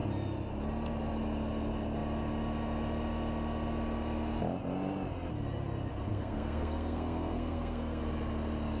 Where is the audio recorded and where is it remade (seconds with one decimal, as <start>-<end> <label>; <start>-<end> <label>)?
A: 0.0-6.1 recorded; 6.1-8.0 remade; 8.0-8.8 recorded